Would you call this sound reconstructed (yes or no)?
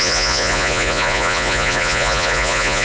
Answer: yes